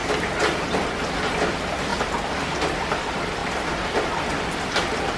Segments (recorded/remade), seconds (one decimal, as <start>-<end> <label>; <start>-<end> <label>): 0.0-5.2 recorded